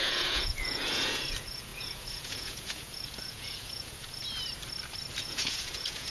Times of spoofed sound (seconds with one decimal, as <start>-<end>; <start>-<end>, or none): 0.0-4.2; 5.2-6.1

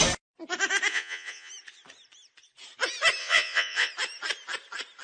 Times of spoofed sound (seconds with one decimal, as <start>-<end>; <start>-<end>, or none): 0.9-1.5; 3.2-3.9

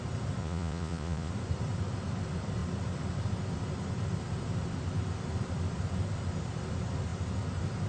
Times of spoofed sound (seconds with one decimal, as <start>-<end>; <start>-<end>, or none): 0.4-1.3

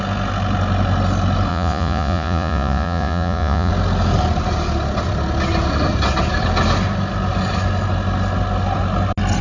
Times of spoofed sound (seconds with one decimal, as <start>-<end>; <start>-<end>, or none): 1.5-3.7

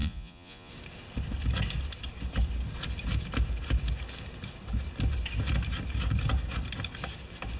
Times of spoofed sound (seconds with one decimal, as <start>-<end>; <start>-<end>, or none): 0.0-0.7